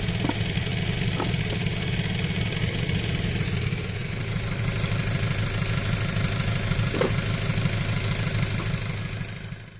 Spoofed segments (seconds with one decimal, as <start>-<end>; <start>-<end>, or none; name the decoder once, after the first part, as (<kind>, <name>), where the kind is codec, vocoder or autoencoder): none